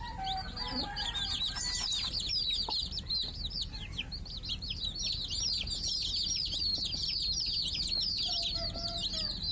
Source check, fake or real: real